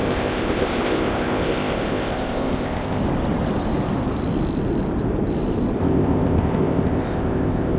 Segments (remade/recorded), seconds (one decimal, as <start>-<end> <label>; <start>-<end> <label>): 0.0-3.0 remade; 3.0-5.8 recorded; 5.8-7.8 remade